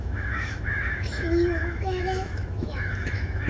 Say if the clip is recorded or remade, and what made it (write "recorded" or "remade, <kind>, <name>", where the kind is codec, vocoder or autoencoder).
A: remade, autoencoder, DAC-VAE